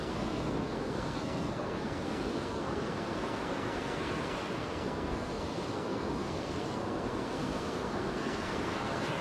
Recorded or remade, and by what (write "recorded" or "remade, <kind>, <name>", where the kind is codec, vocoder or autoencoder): remade, codec, SNAC